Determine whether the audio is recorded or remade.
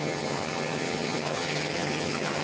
remade